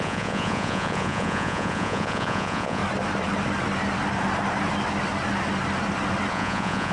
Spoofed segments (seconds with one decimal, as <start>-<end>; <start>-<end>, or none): 0.0-2.8; 6.3-6.9